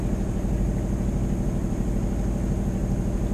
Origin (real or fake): real